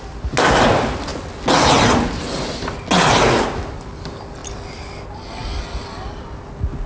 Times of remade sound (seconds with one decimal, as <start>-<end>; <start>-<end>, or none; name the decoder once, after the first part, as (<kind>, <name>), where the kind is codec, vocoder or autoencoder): none